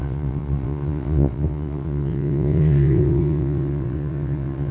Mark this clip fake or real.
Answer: fake